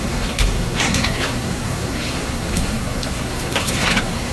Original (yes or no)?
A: no